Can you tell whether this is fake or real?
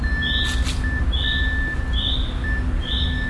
real